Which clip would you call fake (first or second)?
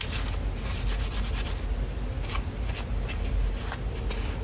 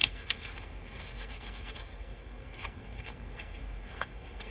second